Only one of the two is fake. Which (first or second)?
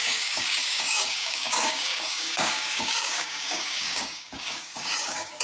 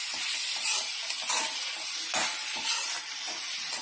first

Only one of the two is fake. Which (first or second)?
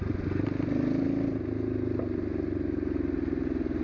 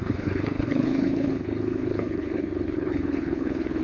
second